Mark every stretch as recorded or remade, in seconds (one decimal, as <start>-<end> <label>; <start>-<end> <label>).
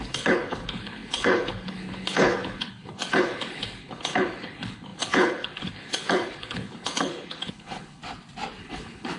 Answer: 0.0-8.0 remade; 8.0-8.6 recorded; 8.6-9.2 remade